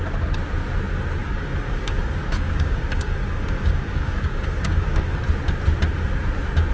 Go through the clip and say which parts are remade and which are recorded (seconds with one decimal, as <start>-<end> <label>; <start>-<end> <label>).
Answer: 0.0-1.2 recorded; 1.2-5.2 remade; 5.2-6.7 recorded